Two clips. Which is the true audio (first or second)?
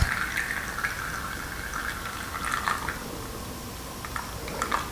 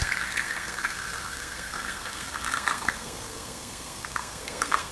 first